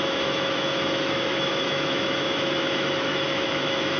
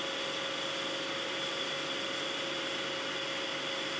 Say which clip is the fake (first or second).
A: first